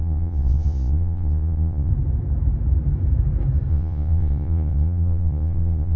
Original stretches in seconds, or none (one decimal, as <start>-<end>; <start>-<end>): 1.9-3.7